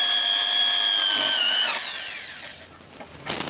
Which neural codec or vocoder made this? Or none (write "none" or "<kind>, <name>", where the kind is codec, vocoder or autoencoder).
none